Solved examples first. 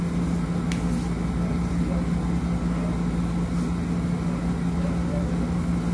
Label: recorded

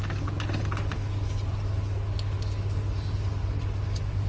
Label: recorded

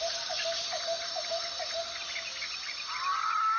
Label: recorded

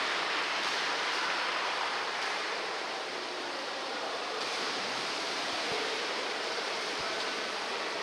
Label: remade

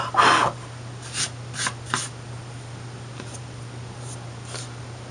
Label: recorded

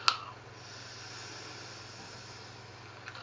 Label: recorded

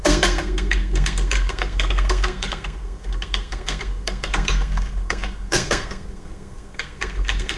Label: remade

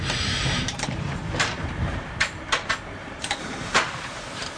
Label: remade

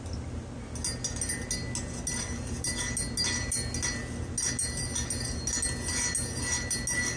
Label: recorded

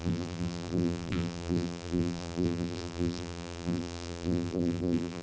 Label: remade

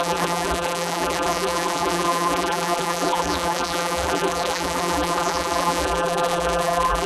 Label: remade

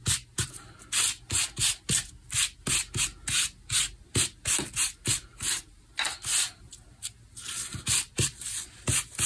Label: recorded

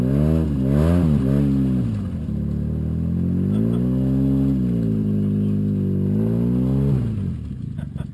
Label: recorded